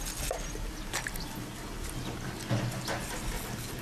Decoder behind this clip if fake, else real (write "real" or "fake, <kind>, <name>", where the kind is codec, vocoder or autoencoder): real